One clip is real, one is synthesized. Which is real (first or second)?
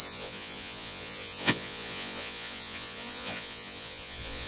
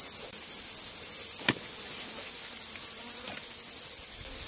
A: second